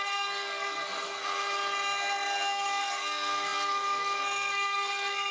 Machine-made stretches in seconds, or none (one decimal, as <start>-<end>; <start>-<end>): 0.0-1.2; 2.8-5.3